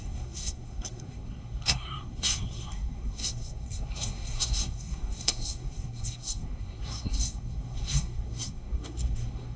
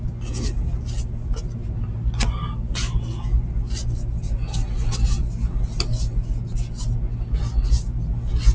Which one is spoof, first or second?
first